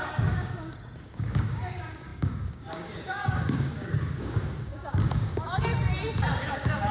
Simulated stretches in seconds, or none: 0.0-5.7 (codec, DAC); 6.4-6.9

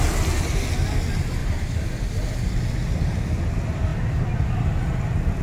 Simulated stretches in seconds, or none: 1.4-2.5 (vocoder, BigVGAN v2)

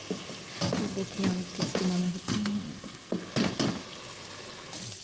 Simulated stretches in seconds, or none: 2.0-3.2 (codec, SNAC)